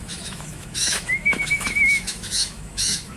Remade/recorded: remade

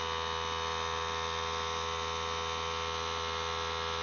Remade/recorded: recorded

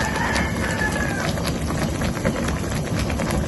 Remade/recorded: recorded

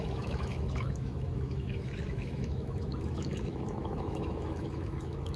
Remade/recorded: remade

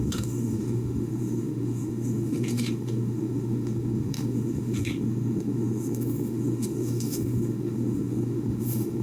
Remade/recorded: remade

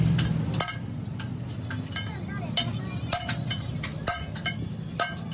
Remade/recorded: recorded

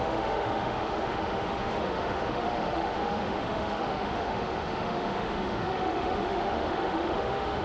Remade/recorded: remade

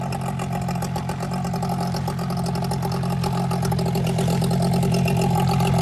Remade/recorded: recorded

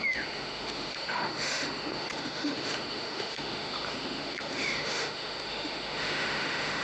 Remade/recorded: remade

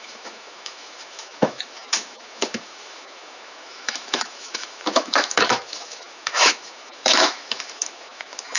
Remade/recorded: remade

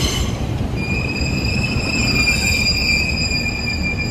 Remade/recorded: recorded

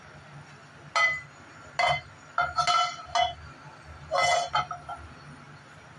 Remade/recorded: recorded